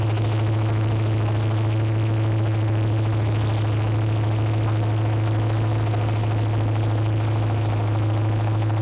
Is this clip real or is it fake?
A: real